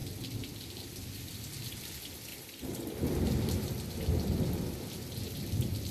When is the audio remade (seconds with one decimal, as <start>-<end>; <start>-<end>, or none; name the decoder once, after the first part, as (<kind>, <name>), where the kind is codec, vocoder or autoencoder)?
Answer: 2.3-3.7 (vocoder, BigVGAN v2)